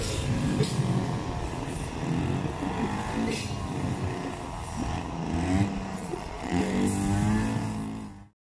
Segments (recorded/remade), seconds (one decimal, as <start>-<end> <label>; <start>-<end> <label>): 0.0-6.0 recorded; 6.0-6.6 remade; 6.6-8.6 recorded